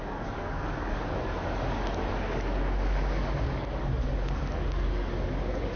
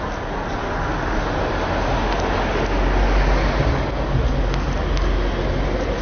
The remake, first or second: first